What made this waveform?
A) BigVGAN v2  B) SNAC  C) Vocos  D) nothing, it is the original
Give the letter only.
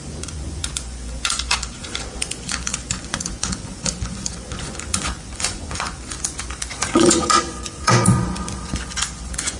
C